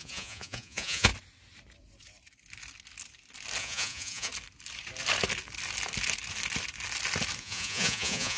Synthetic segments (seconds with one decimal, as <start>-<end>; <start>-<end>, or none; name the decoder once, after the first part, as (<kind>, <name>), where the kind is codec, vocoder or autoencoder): 0.0-1.1 (vocoder, Vocos); 3.6-4.3; 7.4-8.4